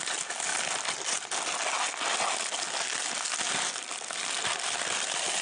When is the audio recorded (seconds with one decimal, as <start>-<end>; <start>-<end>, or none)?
0.0-5.4